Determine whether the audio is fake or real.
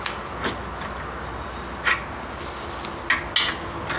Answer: real